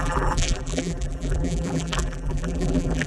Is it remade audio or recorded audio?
remade